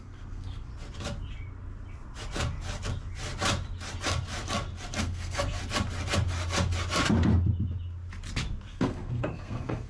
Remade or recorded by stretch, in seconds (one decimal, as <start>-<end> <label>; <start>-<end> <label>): 0.0-0.7 remade; 0.7-5.0 recorded; 5.0-5.6 remade; 5.6-8.7 recorded; 8.7-9.9 remade